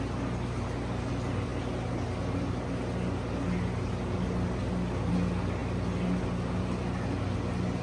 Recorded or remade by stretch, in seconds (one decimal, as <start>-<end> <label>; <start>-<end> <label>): 0.0-7.8 recorded